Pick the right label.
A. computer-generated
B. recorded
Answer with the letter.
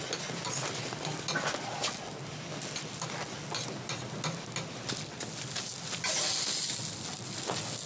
B